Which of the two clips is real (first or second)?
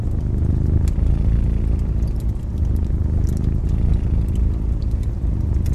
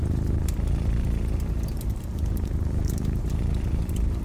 first